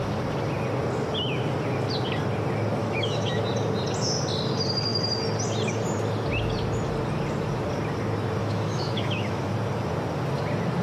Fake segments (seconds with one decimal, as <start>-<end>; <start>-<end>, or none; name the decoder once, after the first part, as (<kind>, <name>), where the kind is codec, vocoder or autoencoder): 2.8-3.4 (autoencoder, DAC-VAE); 8.4-9.5